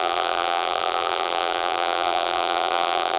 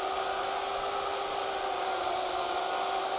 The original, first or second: second